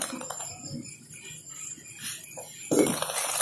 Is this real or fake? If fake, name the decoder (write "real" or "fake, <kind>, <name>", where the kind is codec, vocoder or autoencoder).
real